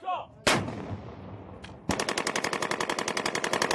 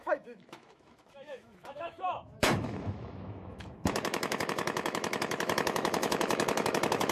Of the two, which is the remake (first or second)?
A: second